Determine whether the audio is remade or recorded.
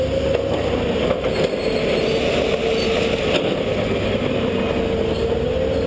recorded